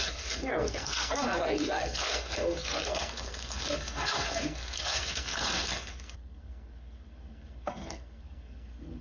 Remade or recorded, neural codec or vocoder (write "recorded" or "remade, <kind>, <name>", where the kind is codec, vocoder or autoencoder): remade, codec, SNAC